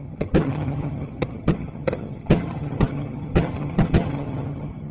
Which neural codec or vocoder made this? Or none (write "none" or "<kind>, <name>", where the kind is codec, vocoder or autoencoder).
vocoder, HiFi-GAN